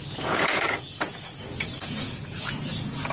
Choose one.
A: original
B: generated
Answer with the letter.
B